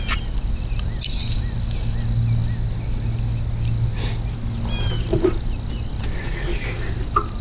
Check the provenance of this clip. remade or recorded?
recorded